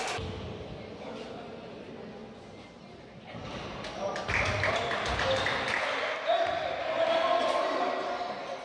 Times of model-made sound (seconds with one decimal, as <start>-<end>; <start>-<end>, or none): none

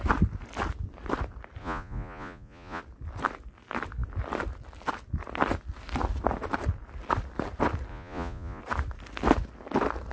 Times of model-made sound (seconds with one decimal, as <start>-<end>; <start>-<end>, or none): 1.6-2.8; 7.9-8.6

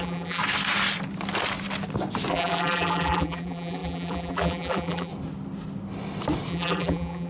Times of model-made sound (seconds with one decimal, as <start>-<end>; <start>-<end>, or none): 0.0-0.4; 2.3-5.1; 6.5-7.3